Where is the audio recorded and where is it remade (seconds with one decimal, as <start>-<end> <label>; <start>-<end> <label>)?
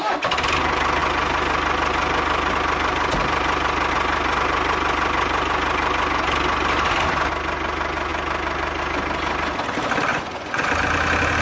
0.0-10.1 recorded; 10.1-10.7 remade; 10.7-11.4 recorded